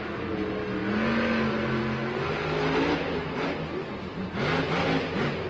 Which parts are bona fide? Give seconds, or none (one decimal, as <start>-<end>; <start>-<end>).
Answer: 0.0-5.5